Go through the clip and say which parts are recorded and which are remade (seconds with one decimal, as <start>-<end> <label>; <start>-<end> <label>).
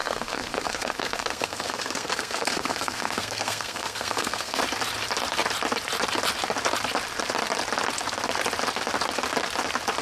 0.0-4.6 remade; 4.6-10.0 recorded